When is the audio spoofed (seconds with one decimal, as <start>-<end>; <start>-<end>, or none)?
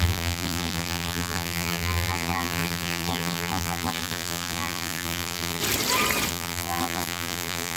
0.0-5.6; 6.3-7.8